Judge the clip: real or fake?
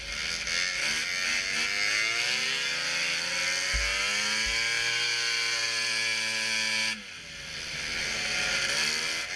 real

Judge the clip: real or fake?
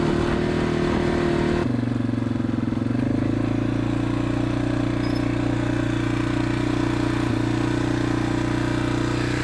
real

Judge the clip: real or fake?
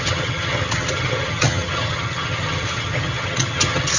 fake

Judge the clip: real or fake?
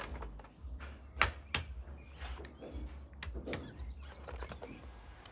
real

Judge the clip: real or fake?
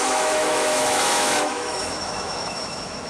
fake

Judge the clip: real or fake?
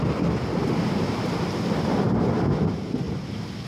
real